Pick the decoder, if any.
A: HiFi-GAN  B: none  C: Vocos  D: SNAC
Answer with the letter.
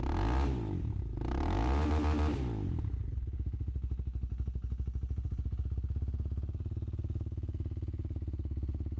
B